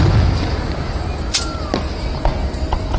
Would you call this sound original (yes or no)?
yes